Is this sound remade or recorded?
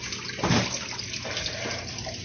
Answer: recorded